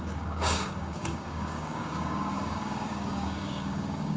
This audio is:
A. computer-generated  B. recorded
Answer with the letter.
A